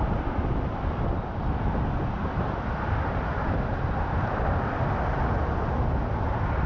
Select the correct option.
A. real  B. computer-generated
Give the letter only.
A